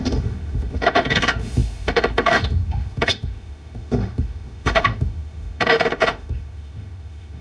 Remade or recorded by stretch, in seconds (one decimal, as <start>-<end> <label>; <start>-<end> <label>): 0.0-7.4 remade